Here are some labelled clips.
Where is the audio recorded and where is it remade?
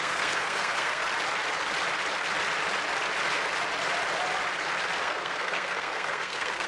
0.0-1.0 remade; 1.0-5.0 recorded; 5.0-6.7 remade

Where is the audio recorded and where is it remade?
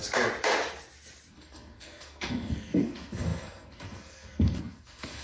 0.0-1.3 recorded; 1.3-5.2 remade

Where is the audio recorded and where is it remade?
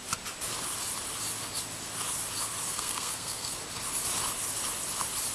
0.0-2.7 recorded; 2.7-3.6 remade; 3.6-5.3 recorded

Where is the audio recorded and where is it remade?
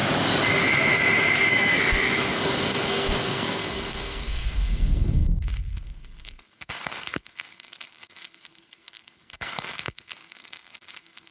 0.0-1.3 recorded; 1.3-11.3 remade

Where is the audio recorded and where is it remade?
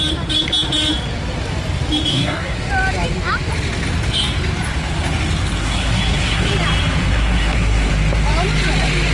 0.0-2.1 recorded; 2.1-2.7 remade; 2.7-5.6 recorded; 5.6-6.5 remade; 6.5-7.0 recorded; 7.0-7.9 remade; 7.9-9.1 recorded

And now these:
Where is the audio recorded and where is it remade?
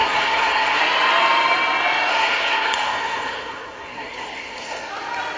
0.0-0.8 remade; 0.8-2.1 recorded; 2.1-4.9 remade; 4.9-5.4 recorded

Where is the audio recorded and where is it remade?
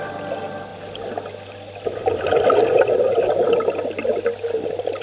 0.0-5.0 recorded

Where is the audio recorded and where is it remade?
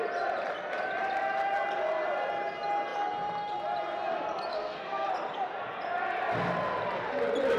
0.0-4.5 recorded; 4.5-5.1 remade; 5.1-7.6 recorded